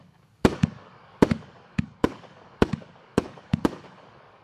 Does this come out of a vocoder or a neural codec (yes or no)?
yes